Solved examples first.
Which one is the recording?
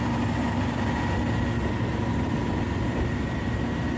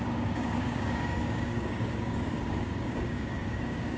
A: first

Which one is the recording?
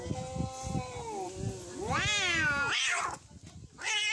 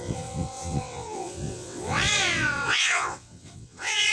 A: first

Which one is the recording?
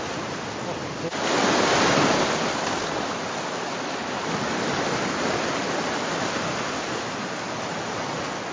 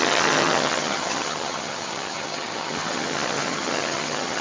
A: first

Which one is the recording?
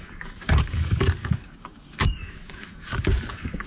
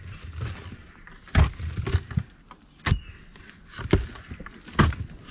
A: second